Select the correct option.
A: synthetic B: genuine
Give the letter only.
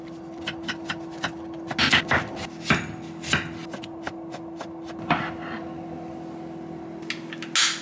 B